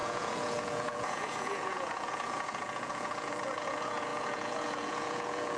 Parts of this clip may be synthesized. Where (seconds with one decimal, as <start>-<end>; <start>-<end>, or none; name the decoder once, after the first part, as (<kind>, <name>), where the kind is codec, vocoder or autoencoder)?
0.0-5.6 (vocoder, Vocos)